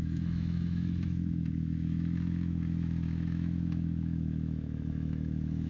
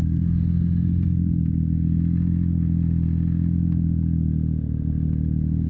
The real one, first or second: second